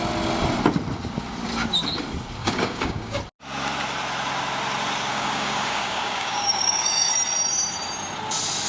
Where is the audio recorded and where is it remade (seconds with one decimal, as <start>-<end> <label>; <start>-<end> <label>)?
0.0-2.4 recorded; 2.4-3.2 remade; 3.2-5.1 recorded; 5.1-7.1 remade; 7.1-8.7 recorded

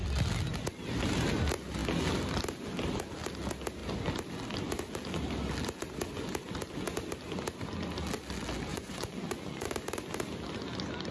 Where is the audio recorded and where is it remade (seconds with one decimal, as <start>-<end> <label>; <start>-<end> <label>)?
0.0-8.7 recorded; 8.7-9.7 remade; 9.7-11.1 recorded

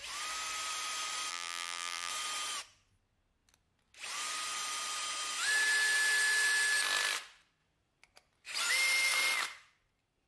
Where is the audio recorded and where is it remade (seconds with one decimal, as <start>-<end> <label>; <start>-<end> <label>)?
0.0-1.3 recorded; 1.3-2.1 remade; 2.1-10.3 recorded

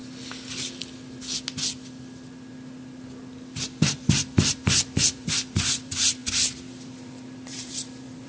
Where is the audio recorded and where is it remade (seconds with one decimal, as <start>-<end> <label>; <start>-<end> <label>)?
0.0-3.8 recorded; 3.8-8.3 remade

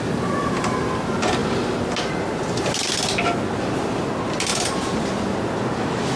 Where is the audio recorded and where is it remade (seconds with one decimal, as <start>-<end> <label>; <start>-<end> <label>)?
0.0-6.2 recorded

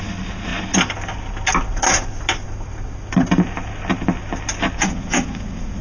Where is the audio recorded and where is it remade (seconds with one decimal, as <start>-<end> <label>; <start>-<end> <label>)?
0.0-4.8 recorded; 4.8-5.8 remade

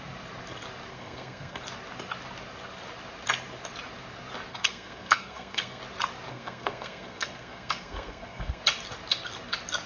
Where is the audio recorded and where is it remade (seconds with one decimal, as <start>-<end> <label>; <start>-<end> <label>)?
0.0-0.9 recorded; 0.9-1.6 remade; 1.6-4.5 recorded; 4.5-5.8 remade; 5.8-6.3 recorded; 6.3-8.6 remade; 8.6-9.9 recorded

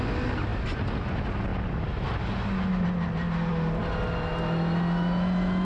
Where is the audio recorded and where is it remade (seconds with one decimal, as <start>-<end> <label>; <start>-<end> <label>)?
0.0-5.6 recorded